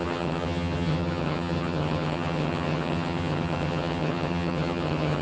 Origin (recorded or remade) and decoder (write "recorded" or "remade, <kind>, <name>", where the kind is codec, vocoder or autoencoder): remade, vocoder, HiFi-GAN